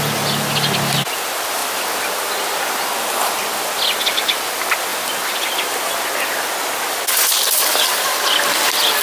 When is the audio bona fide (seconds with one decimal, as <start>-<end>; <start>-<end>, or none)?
0.0-9.0